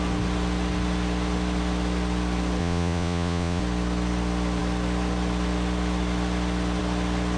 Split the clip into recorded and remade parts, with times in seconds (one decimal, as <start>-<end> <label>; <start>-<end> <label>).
0.0-2.6 recorded; 2.6-3.6 remade; 3.6-7.4 recorded